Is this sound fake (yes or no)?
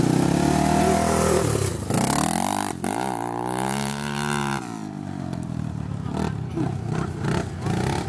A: no